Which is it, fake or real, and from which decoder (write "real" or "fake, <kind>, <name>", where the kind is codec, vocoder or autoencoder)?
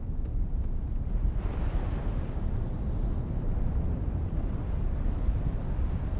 real